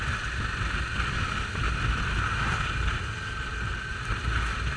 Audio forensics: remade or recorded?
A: recorded